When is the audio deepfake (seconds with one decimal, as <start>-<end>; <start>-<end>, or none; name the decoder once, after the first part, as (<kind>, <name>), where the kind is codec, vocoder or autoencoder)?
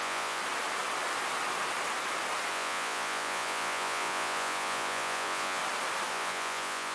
0.0-0.4 (vocoder, Vocos); 2.5-5.6; 6.1-6.9